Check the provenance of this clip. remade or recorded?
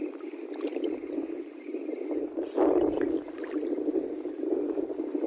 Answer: recorded